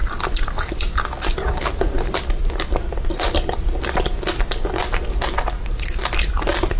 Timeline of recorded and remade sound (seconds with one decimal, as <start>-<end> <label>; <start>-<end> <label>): 0.0-6.8 recorded